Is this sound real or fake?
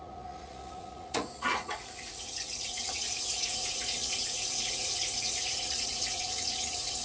fake